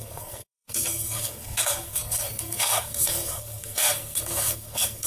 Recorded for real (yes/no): no